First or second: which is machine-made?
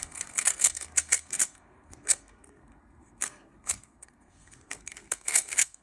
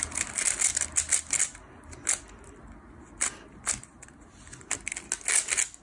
first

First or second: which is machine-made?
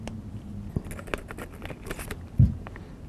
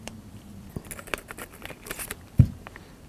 second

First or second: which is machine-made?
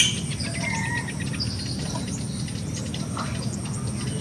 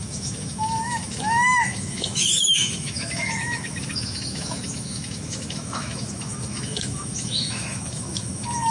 second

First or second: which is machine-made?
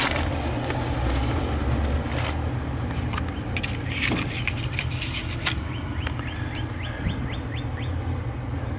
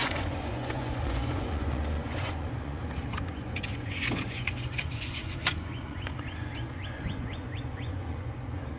second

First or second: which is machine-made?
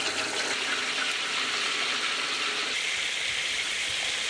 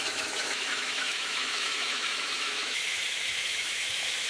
second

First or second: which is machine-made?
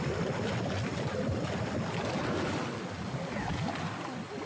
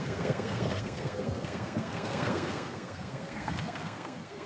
second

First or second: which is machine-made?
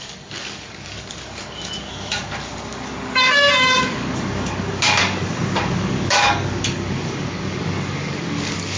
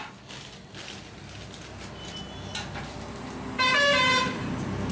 first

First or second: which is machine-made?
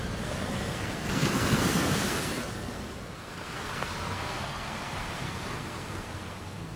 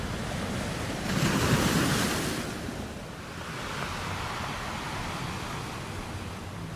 first